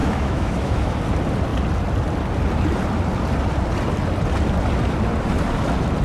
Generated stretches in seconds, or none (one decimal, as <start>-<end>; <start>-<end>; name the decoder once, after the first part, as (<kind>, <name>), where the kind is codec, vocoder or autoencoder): 0.0-0.9 (autoencoder, DAC-VAE)